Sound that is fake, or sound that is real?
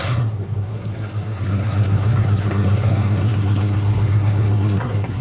fake